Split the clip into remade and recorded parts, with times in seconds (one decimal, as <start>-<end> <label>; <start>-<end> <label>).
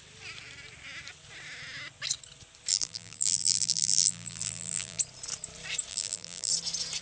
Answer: 0.0-2.7 recorded; 2.7-5.0 remade; 5.0-5.9 recorded; 5.9-6.5 remade; 6.5-7.0 recorded